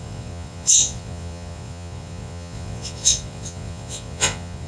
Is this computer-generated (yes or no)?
yes